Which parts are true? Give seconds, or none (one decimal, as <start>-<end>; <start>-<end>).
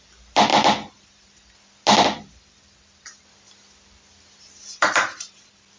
0.0-5.8